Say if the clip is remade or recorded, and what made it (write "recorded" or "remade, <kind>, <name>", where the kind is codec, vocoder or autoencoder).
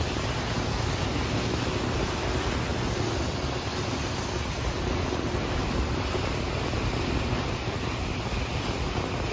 recorded